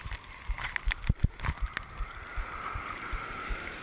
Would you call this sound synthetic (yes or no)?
no